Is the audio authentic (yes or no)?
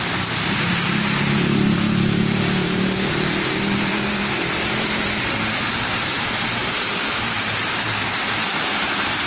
no